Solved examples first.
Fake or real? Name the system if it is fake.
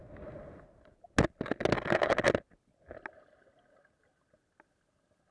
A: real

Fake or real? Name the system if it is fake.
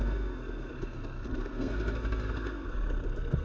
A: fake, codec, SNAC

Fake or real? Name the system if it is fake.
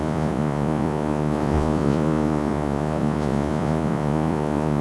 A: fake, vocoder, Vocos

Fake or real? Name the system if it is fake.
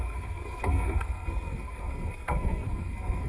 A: fake, codec, SNAC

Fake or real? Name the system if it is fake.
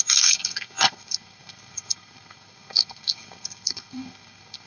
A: fake, codec, SNAC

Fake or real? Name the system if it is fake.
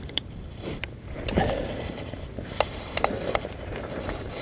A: fake, vocoder, BigVGAN v2